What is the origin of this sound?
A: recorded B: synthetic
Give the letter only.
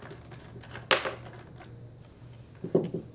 A